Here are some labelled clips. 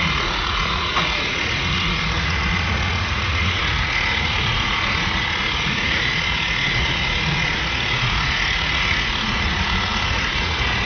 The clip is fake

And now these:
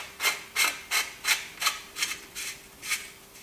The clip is real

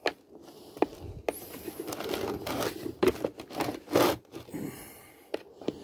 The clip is real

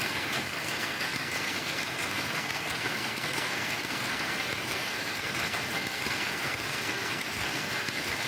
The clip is fake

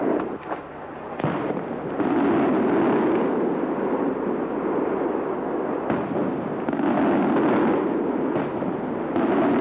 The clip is real